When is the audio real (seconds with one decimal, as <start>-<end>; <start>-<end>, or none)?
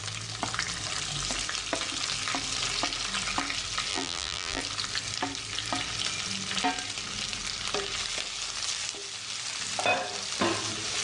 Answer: 0.0-3.9; 4.6-11.0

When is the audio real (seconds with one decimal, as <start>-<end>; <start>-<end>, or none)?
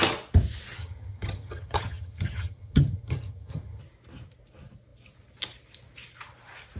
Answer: 0.0-0.8; 3.8-6.8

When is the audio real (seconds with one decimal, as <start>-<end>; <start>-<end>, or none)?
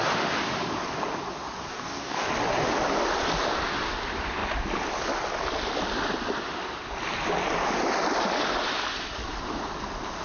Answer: 0.0-1.7; 2.3-10.2